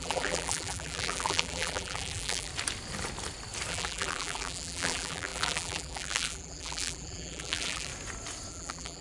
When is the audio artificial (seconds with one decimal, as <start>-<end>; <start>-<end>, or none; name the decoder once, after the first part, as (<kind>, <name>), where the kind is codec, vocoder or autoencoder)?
0.0-2.5 (vocoder, BigVGAN v2); 3.7-7.9; 8.5-9.0